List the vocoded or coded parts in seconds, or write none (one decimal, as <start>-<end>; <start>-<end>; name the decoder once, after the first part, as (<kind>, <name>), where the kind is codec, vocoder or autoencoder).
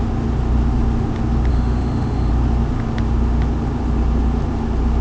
1.5-2.3 (autoencoder, DAC-VAE)